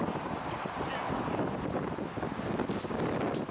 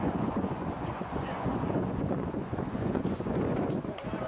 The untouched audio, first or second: first